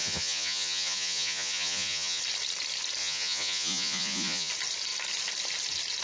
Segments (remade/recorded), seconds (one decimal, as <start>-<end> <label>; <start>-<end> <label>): 0.0-2.2 remade; 2.2-3.0 recorded; 3.0-4.5 remade; 4.5-6.0 recorded